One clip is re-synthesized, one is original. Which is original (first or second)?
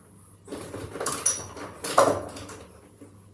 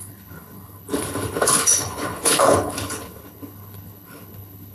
first